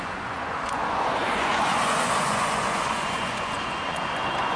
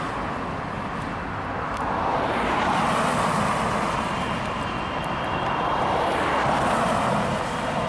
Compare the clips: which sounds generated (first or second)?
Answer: first